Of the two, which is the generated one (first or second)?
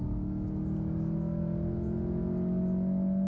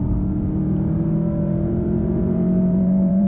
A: second